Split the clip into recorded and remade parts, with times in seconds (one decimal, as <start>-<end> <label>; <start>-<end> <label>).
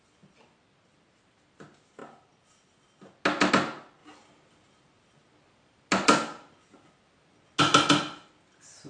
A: 0.0-8.9 recorded